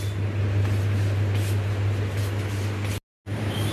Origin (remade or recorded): recorded